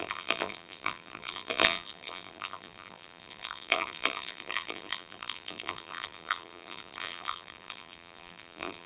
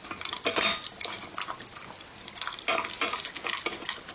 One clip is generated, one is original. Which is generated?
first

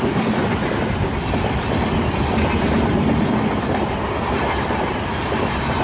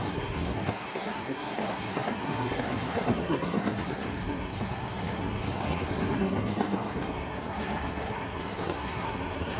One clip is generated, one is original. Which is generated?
second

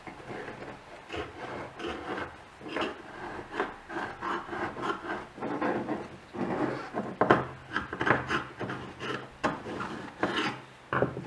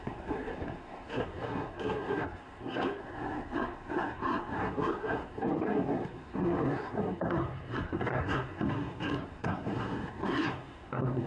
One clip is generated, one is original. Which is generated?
second